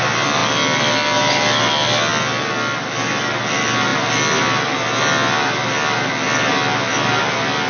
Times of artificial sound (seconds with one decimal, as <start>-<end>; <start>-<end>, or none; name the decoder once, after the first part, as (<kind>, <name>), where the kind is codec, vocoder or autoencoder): none